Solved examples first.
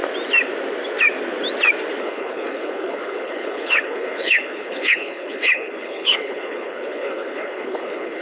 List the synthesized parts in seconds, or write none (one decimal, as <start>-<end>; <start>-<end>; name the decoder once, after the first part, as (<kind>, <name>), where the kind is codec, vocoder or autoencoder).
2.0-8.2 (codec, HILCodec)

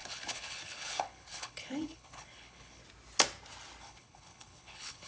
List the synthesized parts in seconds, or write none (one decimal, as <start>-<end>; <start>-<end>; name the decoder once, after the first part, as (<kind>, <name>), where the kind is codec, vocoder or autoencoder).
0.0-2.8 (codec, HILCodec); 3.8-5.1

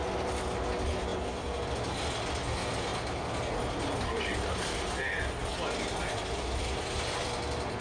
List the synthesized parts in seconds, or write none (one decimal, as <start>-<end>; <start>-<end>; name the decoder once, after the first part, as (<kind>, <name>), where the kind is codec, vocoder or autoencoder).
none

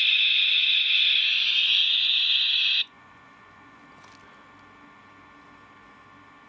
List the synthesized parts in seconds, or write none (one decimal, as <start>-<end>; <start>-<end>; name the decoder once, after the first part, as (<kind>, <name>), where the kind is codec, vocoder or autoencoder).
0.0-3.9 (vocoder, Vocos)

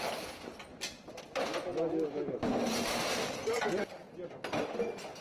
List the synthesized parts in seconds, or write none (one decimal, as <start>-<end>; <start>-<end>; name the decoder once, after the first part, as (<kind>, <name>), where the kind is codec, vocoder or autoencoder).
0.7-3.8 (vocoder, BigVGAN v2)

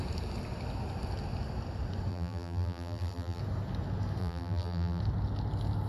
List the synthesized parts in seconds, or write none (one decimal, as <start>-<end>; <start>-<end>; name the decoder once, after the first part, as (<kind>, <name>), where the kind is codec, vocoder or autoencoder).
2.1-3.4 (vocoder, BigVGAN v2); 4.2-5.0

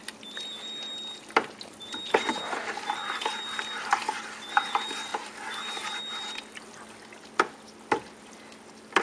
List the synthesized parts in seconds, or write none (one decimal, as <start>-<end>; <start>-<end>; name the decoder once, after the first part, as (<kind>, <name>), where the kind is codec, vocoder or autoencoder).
none

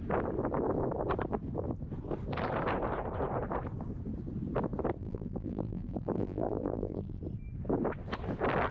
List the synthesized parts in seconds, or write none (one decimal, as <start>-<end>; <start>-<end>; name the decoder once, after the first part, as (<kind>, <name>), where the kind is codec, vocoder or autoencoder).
5.0-7.2 (vocoder, BigVGAN v2)